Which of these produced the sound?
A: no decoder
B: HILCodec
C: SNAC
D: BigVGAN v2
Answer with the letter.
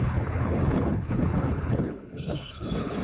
B